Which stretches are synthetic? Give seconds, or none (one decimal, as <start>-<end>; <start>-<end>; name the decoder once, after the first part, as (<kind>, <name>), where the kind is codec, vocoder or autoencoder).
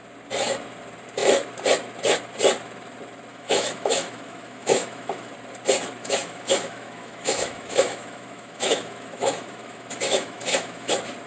3.3-5.3 (autoencoder, DAC-VAE); 6.0-10.9